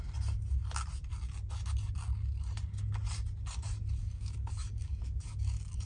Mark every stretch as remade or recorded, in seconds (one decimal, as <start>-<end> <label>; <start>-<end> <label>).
0.0-4.0 recorded; 4.0-5.9 remade